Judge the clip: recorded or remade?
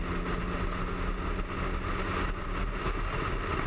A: recorded